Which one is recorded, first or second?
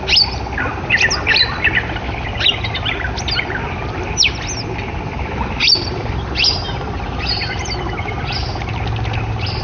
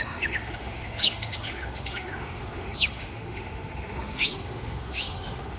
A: first